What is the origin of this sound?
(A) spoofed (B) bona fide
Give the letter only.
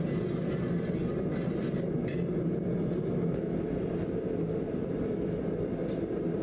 B